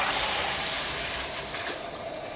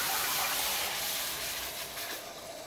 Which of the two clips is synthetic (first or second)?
first